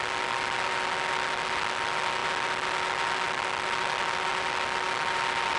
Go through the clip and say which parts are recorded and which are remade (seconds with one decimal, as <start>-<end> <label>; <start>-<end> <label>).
0.0-5.6 recorded